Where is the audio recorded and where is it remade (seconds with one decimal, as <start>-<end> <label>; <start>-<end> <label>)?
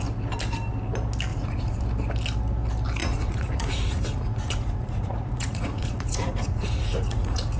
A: 0.0-1.3 recorded; 1.3-1.8 remade; 1.8-3.0 recorded; 3.0-7.6 remade